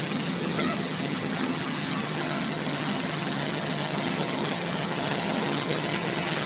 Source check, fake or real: fake